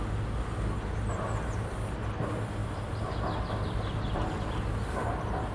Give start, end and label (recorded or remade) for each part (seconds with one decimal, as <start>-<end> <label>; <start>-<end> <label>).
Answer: 0.0-5.5 recorded